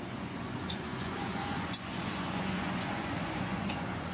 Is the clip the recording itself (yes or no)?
no